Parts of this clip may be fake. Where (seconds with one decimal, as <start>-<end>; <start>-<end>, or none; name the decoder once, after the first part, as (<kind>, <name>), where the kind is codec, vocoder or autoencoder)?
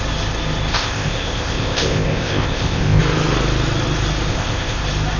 0.7-3.0 (codec, ZipCodec); 4.3-4.8